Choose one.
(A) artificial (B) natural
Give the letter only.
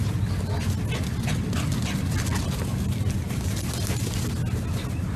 B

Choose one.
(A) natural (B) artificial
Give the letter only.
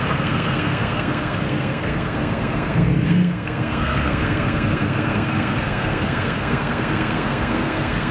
B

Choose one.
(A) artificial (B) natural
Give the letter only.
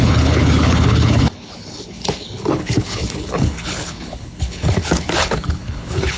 A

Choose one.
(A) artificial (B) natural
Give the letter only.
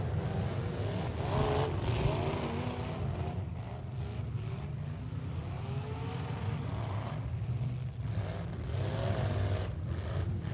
B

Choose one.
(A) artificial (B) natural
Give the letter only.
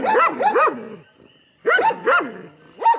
B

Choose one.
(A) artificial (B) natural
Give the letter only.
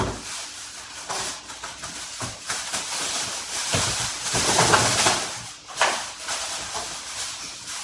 B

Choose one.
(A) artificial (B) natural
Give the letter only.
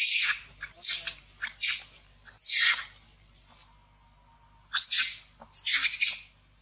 B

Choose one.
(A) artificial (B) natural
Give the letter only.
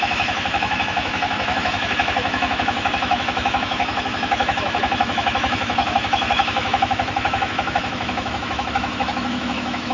A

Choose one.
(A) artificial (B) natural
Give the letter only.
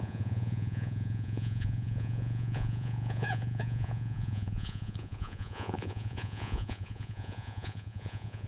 A